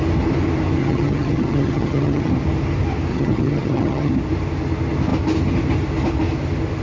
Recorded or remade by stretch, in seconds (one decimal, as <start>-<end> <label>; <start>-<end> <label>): 0.0-0.8 recorded; 0.8-2.3 remade; 2.3-3.1 recorded; 3.1-4.1 remade; 4.1-6.8 recorded